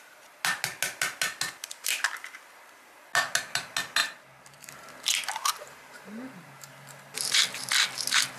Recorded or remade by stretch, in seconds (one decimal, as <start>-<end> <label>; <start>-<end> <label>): 0.0-4.0 recorded; 4.0-4.7 remade; 4.7-5.4 recorded; 5.4-6.7 remade; 6.7-8.4 recorded